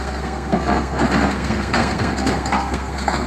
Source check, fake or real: fake